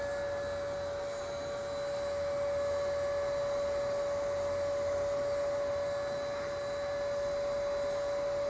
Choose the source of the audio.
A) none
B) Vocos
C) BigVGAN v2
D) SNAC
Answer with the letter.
A